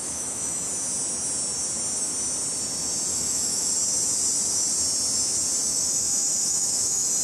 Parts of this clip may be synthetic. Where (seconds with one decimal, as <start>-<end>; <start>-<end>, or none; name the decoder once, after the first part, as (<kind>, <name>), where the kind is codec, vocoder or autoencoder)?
0.0-0.6 (autoencoder, DAC-VAE); 3.1-3.7; 5.7-7.2

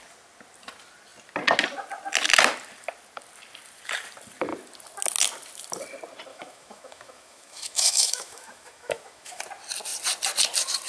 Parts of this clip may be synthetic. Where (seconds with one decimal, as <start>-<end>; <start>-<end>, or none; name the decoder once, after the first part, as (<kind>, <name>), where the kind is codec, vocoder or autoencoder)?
6.3-9.4 (autoencoder, DAC-VAE)

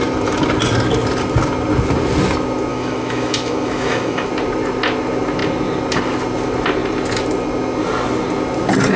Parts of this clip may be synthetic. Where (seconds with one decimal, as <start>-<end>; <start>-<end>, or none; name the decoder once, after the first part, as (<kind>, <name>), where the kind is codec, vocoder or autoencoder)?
2.7-4.3 (autoencoder, DAC-VAE)

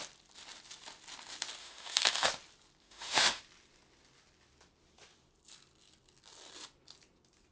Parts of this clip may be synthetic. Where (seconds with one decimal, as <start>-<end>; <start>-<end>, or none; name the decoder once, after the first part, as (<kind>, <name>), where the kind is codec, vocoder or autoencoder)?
1.6-2.3 (autoencoder, DAC-VAE); 2.8-3.4

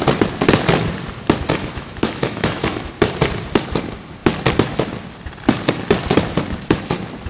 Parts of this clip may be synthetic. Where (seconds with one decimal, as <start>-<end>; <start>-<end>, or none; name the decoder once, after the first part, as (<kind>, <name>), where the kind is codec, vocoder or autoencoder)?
1.5-2.9 (autoencoder, DAC-VAE)

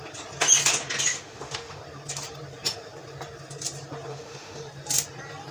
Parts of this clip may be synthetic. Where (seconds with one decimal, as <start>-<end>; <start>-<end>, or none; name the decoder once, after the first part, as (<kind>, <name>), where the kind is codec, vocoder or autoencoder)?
1.1-1.8 (autoencoder, DAC-VAE); 4.1-4.6

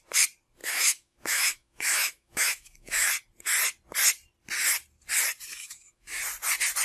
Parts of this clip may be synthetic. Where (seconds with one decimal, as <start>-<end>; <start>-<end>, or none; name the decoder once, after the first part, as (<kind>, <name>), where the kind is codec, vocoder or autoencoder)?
0.6-3.1 (autoencoder, DAC-VAE); 5.5-6.2

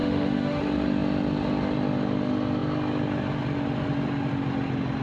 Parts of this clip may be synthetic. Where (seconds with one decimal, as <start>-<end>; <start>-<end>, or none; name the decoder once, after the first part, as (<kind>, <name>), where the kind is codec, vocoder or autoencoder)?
0.0-0.6 (autoencoder, DAC-VAE)